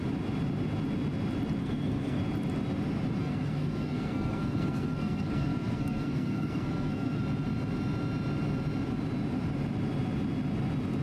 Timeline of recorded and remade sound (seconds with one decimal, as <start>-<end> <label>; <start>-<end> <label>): 0.0-1.6 recorded; 1.6-2.2 remade; 2.2-3.2 recorded; 3.2-7.2 remade; 7.2-11.0 recorded